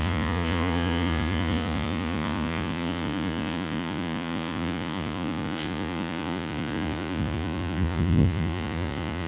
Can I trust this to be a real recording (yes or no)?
no